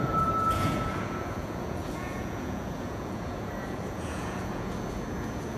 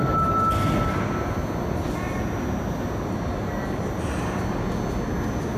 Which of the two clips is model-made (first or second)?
first